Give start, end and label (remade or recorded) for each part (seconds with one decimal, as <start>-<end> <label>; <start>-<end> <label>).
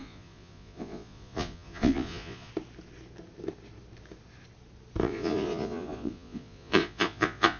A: 0.0-2.5 remade; 2.5-5.0 recorded; 5.0-7.6 remade